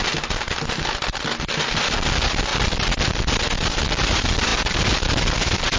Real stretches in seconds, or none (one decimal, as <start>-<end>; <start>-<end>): 0.0-5.8